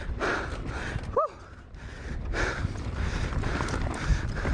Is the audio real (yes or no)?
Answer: yes